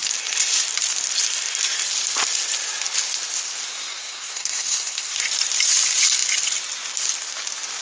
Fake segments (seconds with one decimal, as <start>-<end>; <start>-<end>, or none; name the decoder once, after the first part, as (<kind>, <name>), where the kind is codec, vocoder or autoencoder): 3.7-5.2 (codec, SNAC)

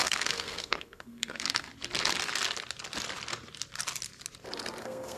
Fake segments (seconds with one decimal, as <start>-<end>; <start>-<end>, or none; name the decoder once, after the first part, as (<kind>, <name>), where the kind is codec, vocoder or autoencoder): 0.0-1.7 (codec, SNAC); 4.8-5.2

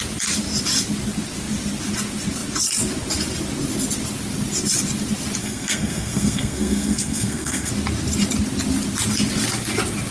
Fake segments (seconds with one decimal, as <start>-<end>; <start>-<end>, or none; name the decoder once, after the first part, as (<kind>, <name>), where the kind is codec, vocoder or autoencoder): 5.4-7.7 (codec, SNAC)

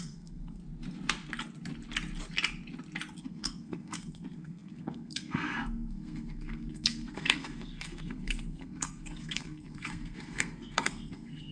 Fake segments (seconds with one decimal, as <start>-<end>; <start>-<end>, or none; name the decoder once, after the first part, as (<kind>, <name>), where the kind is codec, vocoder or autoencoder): 0.0-0.6 (codec, SNAC); 3.2-11.5